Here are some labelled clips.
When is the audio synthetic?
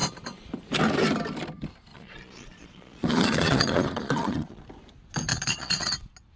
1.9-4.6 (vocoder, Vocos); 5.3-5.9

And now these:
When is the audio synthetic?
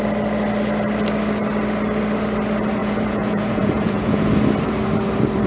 2.8-4.3 (vocoder, Vocos)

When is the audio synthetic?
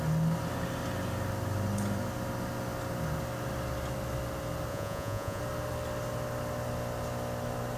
4.7-5.4 (vocoder, Vocos)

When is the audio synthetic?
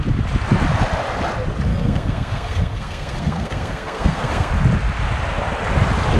1.7-4.5 (codec, SNAC)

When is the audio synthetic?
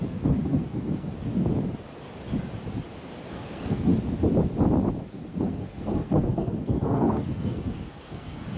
0.0-1.1 (codec, SNAC); 3.3-3.9; 5.1-8.6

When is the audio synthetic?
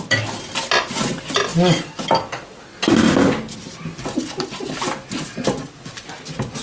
none